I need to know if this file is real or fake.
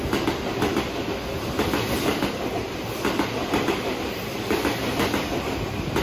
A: real